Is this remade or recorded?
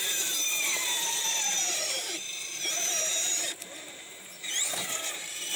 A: remade